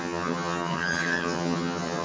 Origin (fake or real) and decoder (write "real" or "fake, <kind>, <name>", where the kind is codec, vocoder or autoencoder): fake, vocoder, HiFi-GAN